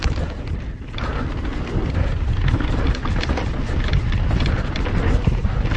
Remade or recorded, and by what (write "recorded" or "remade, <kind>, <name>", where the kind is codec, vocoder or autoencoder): recorded